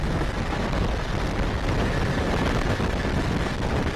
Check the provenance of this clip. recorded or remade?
recorded